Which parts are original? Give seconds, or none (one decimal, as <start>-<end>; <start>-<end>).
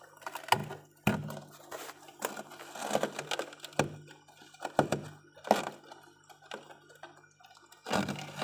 0.0-8.4